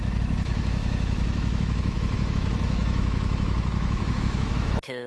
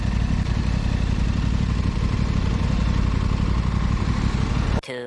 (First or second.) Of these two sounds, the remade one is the first